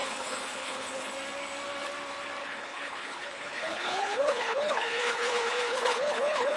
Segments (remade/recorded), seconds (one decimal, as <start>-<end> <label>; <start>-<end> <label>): 0.0-1.1 remade; 1.1-2.4 recorded; 2.4-6.6 remade